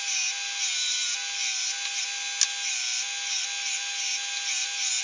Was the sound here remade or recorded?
recorded